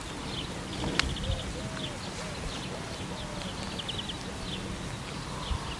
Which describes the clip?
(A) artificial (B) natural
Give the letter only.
B